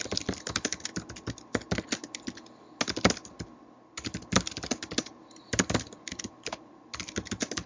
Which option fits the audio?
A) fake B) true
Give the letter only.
B